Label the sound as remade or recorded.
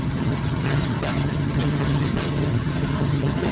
remade